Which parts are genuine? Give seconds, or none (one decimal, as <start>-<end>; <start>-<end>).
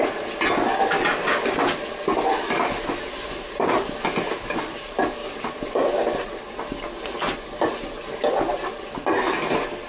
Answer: 0.0-5.2; 5.7-9.9